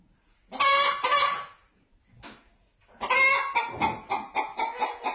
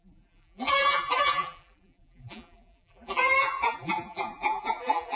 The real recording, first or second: first